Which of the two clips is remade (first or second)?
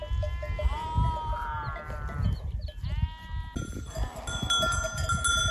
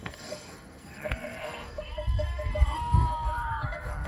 second